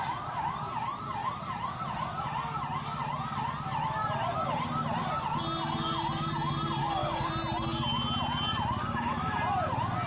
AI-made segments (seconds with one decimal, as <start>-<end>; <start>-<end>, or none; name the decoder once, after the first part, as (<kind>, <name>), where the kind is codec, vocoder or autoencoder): 6.8-7.3 (codec, DAC); 8.8-9.4

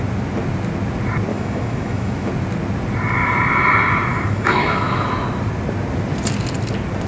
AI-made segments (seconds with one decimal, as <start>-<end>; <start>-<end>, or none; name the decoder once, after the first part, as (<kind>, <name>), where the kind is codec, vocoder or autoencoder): 1.3-2.3 (autoencoder, DAC-VAE); 4.1-5.1

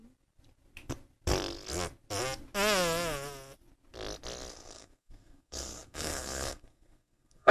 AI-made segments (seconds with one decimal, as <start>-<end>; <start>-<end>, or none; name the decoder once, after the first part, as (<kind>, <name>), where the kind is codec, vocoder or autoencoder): 4.5-7.5 (codec, SNAC)

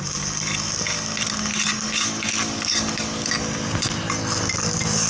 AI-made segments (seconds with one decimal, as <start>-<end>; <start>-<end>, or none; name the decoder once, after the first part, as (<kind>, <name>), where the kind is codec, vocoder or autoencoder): 1.5-3.3 (codec, DAC)

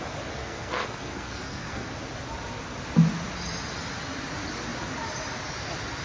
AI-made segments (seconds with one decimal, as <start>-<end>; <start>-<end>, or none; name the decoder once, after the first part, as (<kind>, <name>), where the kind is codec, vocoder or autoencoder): 0.4-1.9 (codec, SNAC)